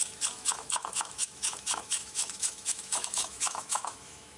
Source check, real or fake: fake